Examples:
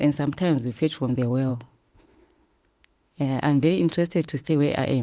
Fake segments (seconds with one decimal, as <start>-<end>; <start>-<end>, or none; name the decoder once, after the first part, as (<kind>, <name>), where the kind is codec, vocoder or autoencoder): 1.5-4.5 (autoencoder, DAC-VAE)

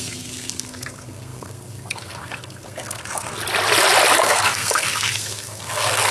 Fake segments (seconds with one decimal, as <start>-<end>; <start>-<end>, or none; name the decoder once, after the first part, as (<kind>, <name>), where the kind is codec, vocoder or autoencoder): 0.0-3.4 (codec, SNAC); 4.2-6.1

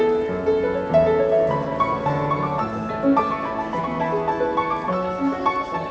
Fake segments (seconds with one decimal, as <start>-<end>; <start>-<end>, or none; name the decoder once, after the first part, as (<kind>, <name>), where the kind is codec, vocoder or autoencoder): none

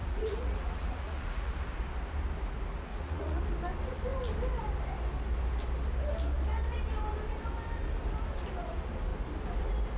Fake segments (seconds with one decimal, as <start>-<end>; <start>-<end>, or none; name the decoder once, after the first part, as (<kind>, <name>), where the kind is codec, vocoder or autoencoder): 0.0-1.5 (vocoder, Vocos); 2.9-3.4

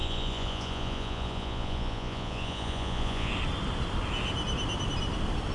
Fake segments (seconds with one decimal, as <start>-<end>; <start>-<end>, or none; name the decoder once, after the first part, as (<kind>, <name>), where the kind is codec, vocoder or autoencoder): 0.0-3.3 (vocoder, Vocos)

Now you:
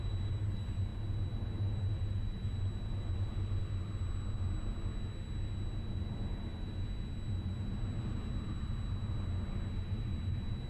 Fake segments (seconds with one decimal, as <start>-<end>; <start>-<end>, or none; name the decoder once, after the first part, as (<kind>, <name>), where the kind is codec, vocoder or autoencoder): none

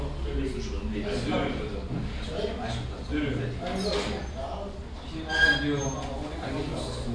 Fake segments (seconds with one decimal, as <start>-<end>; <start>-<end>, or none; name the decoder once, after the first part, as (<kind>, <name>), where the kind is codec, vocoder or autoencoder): none

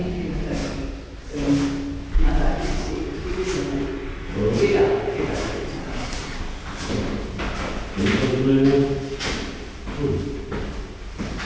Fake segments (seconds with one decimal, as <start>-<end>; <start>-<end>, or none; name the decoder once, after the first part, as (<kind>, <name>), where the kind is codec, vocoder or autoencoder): 5.8-6.4 (codec, SNAC)